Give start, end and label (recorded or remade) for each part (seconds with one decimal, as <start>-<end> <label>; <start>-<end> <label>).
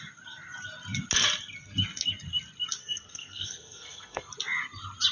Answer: 0.0-2.8 recorded; 2.8-4.3 remade; 4.3-5.1 recorded